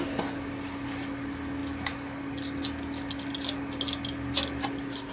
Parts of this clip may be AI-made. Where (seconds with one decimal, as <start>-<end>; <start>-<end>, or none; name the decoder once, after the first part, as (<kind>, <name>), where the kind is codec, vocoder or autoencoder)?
none